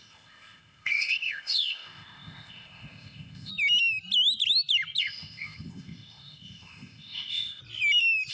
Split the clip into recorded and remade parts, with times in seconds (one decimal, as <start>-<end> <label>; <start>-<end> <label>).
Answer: 0.0-3.5 remade; 3.5-5.0 recorded; 5.0-7.6 remade; 7.6-8.3 recorded